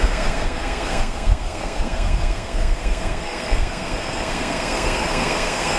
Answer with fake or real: fake